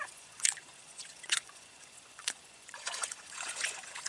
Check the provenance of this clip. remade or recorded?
remade